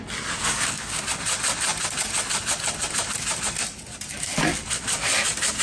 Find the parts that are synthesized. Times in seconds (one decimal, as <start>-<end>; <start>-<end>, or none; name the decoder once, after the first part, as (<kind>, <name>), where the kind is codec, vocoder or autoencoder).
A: 0.4-1.0 (codec, DAC); 4.1-4.7